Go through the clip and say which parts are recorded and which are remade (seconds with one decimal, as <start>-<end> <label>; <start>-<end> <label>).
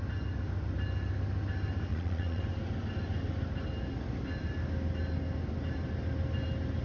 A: 0.0-1.9 recorded; 1.9-2.4 remade; 2.4-6.8 recorded